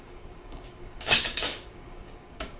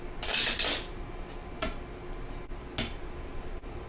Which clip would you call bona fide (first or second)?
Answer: second